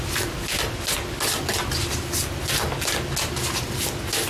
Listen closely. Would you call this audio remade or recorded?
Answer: recorded